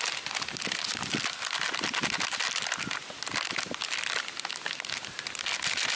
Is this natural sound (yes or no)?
yes